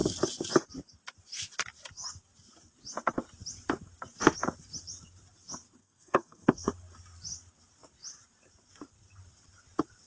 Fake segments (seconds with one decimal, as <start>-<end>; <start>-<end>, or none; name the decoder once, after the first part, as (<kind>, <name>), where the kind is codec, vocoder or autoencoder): 5.8-6.7 (codec, SNAC)